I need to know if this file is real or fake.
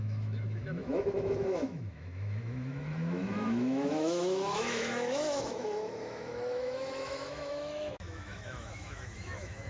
fake